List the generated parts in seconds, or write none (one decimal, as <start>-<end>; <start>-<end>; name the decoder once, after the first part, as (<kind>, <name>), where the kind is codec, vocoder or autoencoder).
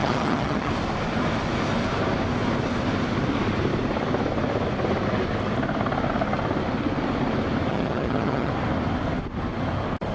0.0-0.7 (vocoder, HiFi-GAN); 7.7-8.5